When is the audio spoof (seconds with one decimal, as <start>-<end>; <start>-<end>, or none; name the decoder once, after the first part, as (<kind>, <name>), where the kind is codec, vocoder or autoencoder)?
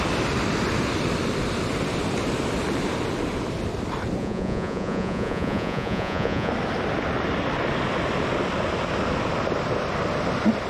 4.2-6.5 (vocoder, Vocos)